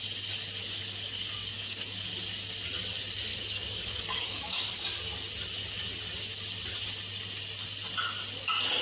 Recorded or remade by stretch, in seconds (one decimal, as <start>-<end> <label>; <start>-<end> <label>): 0.0-0.6 recorded; 0.6-2.1 remade; 2.1-3.3 recorded; 3.3-4.7 remade; 4.7-8.8 recorded